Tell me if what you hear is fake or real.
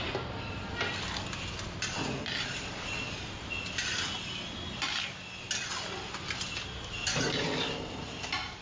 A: real